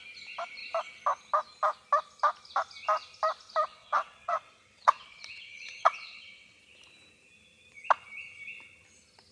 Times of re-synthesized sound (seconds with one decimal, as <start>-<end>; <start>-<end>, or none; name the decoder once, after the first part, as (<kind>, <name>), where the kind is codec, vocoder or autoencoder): 3.7-6.6 (vocoder, WaveNeXt)